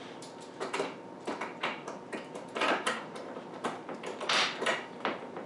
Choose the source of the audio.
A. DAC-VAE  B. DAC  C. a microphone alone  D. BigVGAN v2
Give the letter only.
D